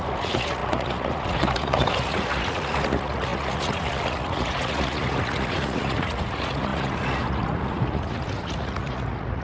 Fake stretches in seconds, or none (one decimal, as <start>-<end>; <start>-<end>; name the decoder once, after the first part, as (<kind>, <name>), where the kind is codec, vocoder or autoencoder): 0.0-9.4 (vocoder, Vocos)